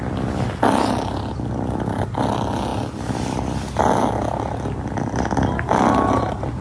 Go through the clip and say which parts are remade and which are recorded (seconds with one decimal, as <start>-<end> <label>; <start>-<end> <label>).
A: 0.0-6.6 recorded